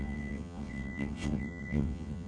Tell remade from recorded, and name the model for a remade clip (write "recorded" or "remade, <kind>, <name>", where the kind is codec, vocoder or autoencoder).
remade, vocoder, WaveNeXt